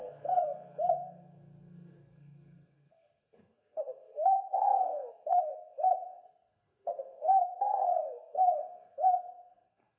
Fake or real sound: fake